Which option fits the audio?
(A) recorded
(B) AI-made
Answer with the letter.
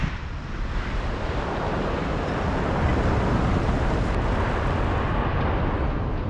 A